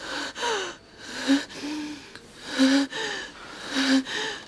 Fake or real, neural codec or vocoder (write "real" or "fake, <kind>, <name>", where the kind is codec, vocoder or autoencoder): real